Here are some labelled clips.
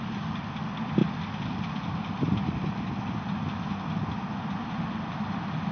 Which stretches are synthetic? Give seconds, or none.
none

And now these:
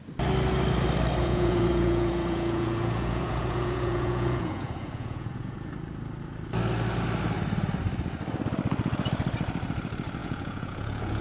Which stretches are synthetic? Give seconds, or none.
1.2-5.7 (vocoder, Vocos); 10.2-11.2